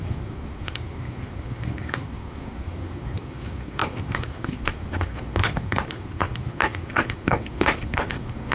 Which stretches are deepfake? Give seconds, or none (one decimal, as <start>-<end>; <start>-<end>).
0.0-8.5